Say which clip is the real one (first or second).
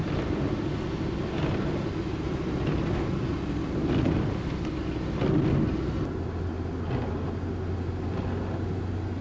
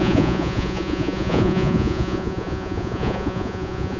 first